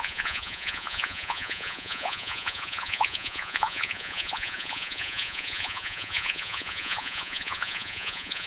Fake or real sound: fake